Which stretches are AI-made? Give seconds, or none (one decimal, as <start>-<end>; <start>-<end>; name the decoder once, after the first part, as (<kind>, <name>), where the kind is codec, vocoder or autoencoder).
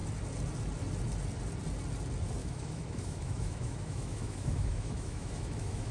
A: 2.4-5.9 (autoencoder, DAC-VAE)